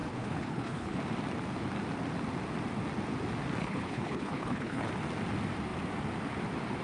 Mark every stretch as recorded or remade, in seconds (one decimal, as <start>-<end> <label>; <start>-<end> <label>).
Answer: 0.0-1.0 remade; 1.0-3.6 recorded; 3.6-4.9 remade; 4.9-6.8 recorded